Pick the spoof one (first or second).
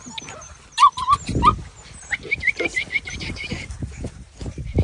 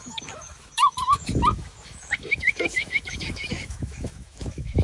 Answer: second